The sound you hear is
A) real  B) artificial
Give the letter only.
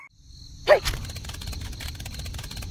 A